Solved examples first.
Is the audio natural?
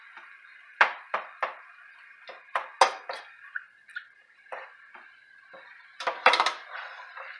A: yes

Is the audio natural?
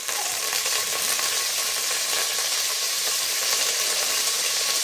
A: no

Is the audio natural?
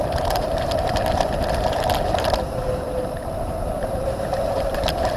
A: no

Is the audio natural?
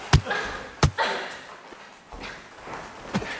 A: yes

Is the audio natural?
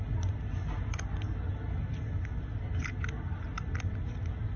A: yes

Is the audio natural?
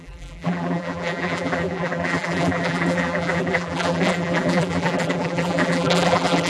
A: no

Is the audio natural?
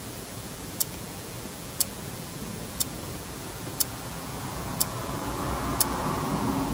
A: no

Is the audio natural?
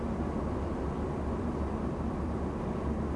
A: no